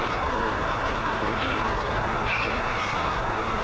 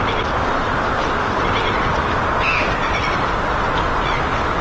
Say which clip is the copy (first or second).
first